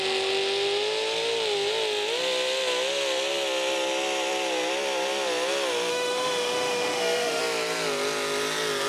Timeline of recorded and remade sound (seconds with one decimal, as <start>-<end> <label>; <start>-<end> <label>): 0.0-5.9 recorded; 5.9-7.4 remade; 7.4-8.9 recorded